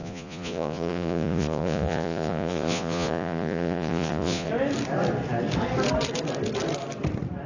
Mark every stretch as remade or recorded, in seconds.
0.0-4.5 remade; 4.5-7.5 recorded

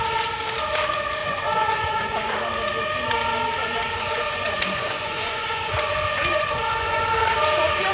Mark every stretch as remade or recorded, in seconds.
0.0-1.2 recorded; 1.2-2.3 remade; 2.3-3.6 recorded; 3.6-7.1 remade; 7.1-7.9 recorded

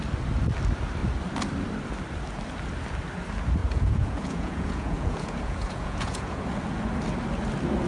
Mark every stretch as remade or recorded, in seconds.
0.0-3.6 recorded; 3.6-6.4 remade; 6.4-7.9 recorded

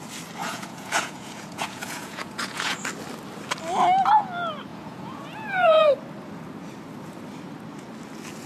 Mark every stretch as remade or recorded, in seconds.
0.0-0.4 recorded; 0.4-2.8 remade; 2.8-4.7 recorded; 4.7-5.9 remade; 5.9-8.5 recorded